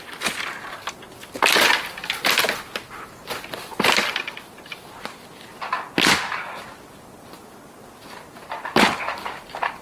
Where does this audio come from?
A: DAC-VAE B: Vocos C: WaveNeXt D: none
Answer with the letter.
D